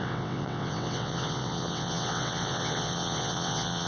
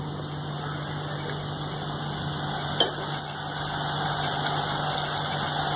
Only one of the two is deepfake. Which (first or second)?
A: first